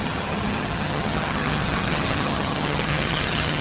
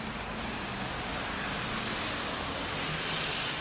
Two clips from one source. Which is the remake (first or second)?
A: first